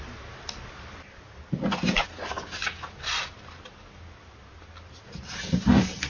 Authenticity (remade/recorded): recorded